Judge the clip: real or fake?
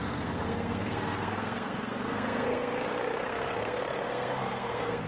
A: fake